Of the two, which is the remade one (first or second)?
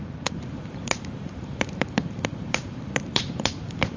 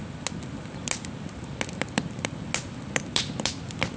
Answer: first